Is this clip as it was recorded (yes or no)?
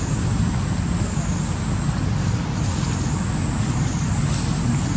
yes